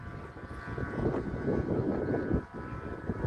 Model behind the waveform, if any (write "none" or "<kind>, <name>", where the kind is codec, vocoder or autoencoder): none